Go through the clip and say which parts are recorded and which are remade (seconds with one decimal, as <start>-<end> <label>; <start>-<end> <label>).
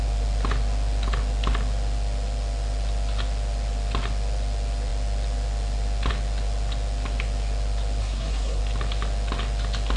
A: 0.0-8.0 recorded; 8.0-8.6 remade; 8.6-10.0 recorded